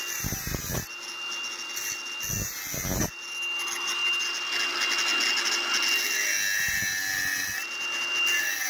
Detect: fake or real real